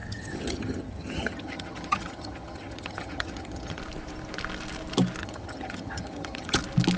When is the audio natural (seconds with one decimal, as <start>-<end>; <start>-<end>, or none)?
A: 3.8-5.2; 6.6-7.0